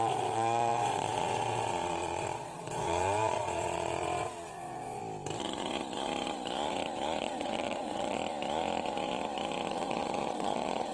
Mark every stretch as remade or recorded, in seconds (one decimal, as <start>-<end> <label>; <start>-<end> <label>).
0.0-5.0 remade; 5.0-7.2 recorded; 7.2-8.2 remade; 8.2-9.7 recorded; 9.7-10.9 remade